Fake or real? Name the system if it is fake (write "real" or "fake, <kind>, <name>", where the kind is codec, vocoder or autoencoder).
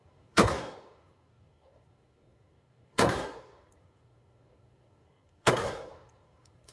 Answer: fake, codec, SNAC